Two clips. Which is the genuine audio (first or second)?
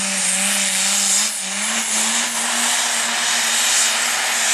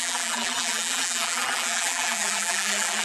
first